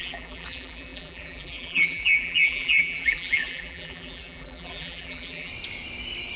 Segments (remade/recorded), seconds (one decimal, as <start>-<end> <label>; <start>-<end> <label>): 0.0-5.5 remade; 5.5-6.4 recorded